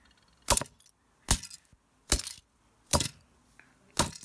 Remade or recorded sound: recorded